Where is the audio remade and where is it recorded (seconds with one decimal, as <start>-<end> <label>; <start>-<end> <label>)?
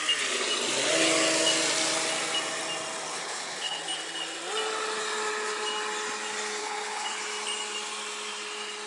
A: 0.0-3.1 recorded; 3.1-3.8 remade; 3.8-6.6 recorded; 6.6-7.2 remade; 7.2-8.9 recorded